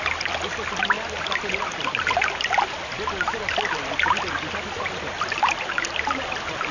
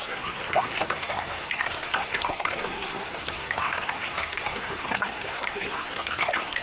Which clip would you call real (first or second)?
first